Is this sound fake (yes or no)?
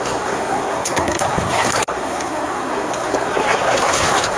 yes